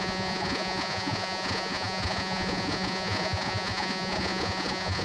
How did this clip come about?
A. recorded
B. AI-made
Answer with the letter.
B